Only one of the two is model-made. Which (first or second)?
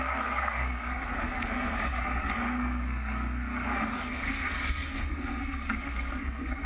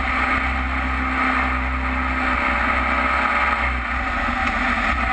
first